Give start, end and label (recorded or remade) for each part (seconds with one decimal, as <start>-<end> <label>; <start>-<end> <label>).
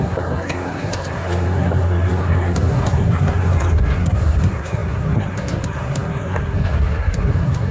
0.0-7.7 remade